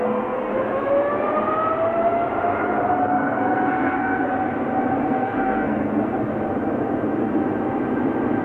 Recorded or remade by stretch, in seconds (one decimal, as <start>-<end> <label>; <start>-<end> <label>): 0.0-0.5 remade; 0.5-3.0 recorded; 3.0-4.3 remade; 4.3-5.0 recorded; 5.0-6.3 remade; 6.3-8.4 recorded